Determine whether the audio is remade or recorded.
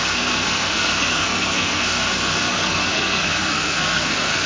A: remade